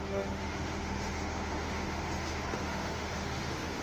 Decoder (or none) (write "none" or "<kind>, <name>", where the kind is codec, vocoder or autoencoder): autoencoder, DAC-VAE